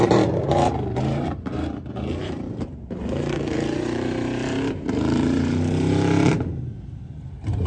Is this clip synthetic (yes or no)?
yes